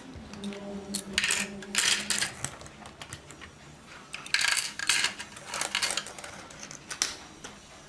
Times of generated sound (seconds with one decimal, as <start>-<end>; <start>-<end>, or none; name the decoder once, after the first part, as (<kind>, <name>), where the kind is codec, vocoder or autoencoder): none